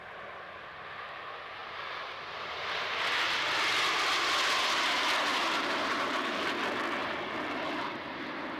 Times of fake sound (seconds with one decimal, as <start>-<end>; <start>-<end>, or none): 5.3-6.4